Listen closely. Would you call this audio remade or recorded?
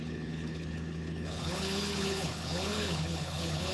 remade